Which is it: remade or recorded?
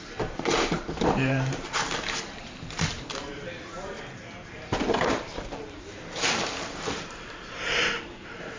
remade